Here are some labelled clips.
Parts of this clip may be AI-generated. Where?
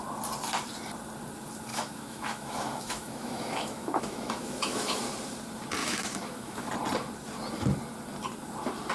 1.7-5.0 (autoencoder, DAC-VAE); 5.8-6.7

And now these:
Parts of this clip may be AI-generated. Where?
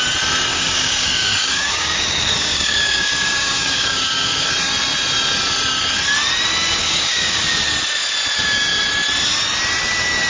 0.5-4.5 (codec, DAC); 6.8-7.4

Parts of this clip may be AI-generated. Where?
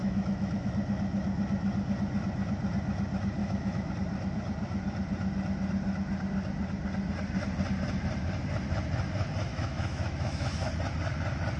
0.0-0.7 (autoencoder, DAC-VAE); 3.4-3.9; 9.5-10.7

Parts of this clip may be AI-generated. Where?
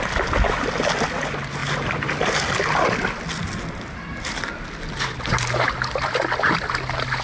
none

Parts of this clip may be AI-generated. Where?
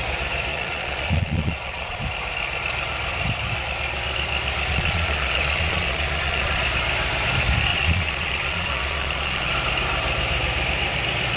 0.5-2.0 (vocoder, Vocos); 4.7-6.6; 7.7-9.5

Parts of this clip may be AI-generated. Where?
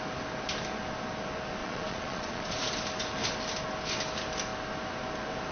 1.6-2.6 (vocoder, Vocos)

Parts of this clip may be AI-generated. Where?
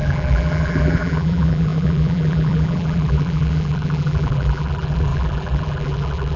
0.0-6.4 (vocoder, BigVGAN v2)